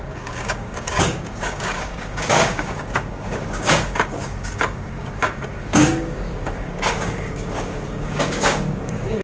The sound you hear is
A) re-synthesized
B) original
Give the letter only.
A